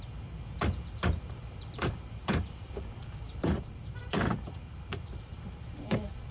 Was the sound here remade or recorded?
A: remade